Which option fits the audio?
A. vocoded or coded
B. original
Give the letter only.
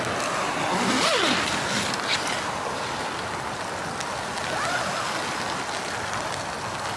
B